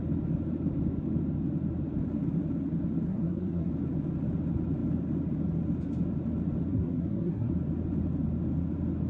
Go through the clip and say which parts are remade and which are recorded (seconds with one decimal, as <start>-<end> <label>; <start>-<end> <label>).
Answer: 0.0-3.1 recorded; 3.1-3.7 remade; 3.7-6.7 recorded; 6.7-7.5 remade; 7.5-9.1 recorded